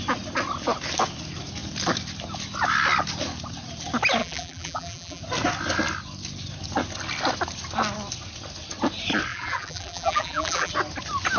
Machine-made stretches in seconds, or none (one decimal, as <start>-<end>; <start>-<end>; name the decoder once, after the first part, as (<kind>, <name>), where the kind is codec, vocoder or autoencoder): 4.2-5.2 (vocoder, BigVGAN v2); 9.3-10.7